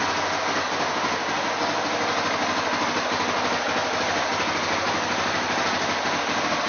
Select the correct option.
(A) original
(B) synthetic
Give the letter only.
A